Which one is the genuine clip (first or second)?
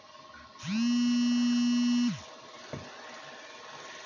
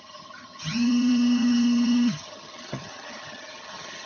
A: first